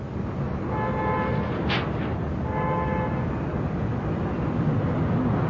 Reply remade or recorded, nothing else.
recorded